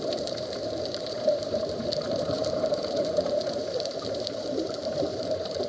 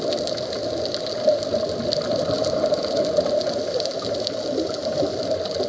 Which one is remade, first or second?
first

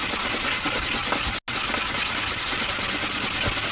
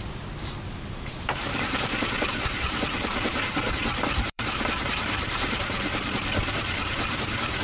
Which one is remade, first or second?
second